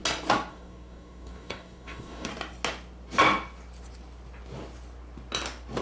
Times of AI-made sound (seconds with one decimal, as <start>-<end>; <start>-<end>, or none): 0.5-2.3